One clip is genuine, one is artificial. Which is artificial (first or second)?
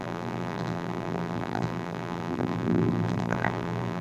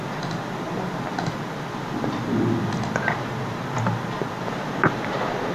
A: first